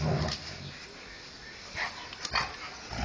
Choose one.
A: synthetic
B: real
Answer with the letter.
B